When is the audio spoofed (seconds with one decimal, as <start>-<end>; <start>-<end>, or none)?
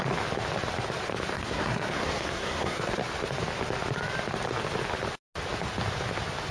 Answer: 1.3-2.9